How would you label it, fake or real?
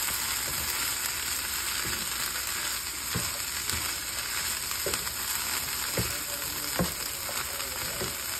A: real